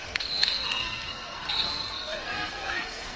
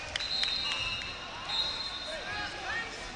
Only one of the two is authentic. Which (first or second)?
second